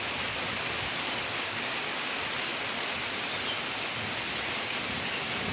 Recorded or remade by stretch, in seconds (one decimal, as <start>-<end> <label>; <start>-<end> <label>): 0.0-1.4 recorded; 1.4-2.1 remade; 2.1-5.5 recorded